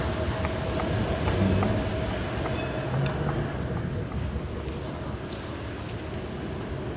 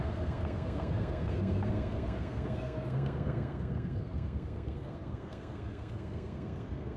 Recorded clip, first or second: first